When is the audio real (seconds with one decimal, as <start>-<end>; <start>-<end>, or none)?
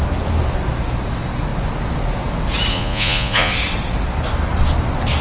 0.0-2.7; 3.5-5.2